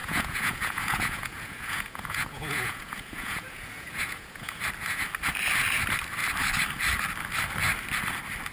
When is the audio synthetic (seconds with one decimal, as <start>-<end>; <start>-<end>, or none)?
0.0-4.6